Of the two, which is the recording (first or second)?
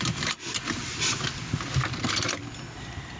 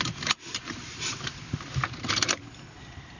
first